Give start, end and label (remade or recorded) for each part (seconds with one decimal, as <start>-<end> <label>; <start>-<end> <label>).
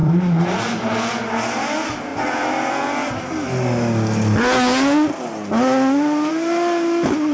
0.0-0.6 remade; 0.6-7.3 recorded